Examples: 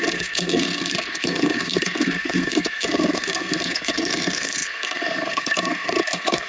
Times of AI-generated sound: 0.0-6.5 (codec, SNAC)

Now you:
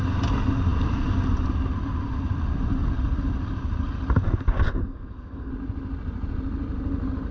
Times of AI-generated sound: 4.8-5.5 (codec, SNAC)